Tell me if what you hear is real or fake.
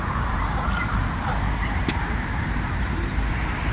fake